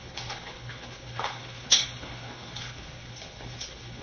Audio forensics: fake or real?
fake